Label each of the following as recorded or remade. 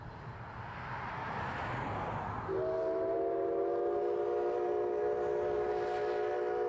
recorded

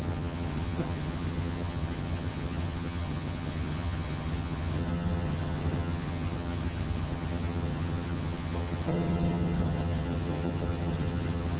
remade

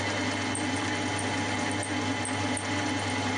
recorded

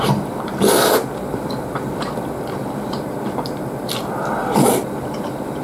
remade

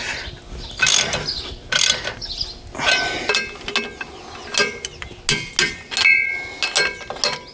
recorded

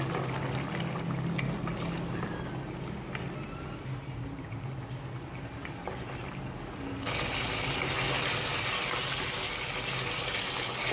recorded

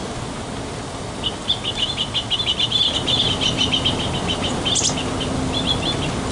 recorded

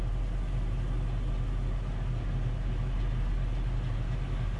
recorded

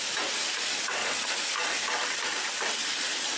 recorded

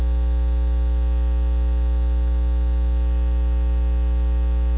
recorded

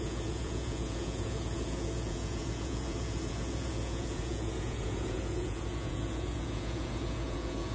remade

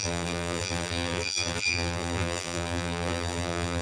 remade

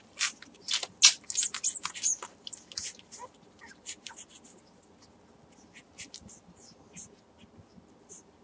recorded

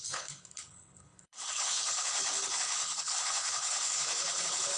remade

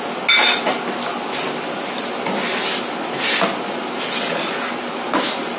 recorded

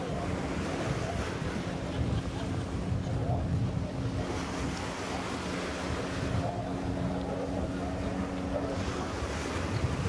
recorded